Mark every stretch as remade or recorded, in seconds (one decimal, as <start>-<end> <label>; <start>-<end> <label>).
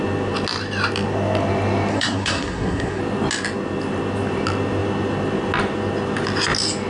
0.0-1.9 recorded; 1.9-3.0 remade; 3.0-6.9 recorded